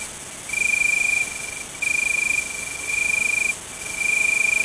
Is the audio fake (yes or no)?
no